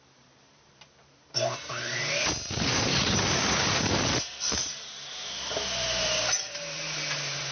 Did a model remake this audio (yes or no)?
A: yes